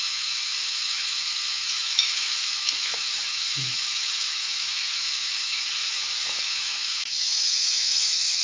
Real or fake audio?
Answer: fake